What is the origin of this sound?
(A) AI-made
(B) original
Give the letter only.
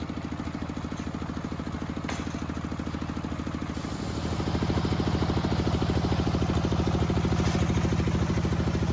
B